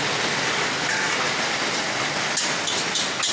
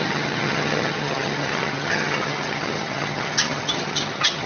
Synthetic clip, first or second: second